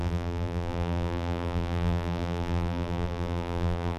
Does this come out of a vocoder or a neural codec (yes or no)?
yes